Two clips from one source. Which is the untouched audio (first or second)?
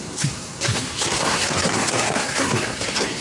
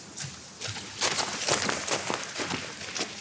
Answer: second